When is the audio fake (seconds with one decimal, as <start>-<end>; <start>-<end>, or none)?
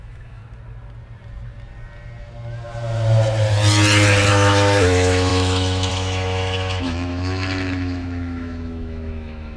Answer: 0.0-0.4; 4.3-9.6